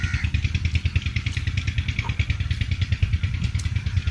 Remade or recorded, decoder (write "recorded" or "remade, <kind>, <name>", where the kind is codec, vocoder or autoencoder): recorded